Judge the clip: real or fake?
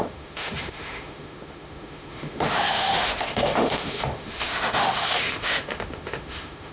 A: fake